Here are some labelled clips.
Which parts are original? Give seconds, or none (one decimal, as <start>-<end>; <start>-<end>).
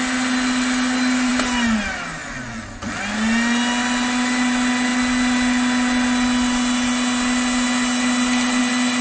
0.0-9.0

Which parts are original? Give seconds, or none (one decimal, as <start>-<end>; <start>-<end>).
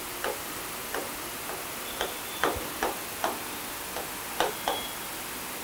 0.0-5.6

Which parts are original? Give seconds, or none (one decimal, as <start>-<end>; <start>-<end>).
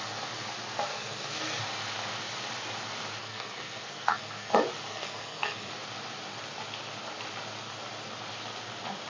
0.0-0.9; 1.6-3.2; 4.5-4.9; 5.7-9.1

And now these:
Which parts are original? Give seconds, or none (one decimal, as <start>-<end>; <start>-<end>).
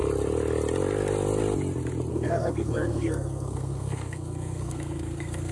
0.0-2.1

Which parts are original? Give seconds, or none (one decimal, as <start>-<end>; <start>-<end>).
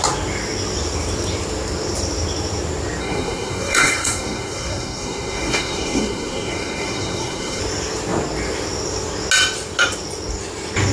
0.0-3.0; 7.6-10.9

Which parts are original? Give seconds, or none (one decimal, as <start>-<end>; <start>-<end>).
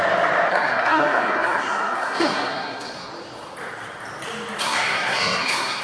0.0-0.5; 3.1-4.6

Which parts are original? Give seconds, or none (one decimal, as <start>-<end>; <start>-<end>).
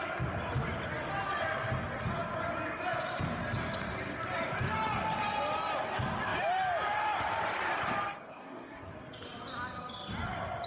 0.0-8.3; 8.9-10.7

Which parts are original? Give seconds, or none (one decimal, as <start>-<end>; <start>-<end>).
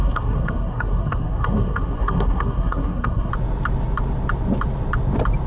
3.3-5.5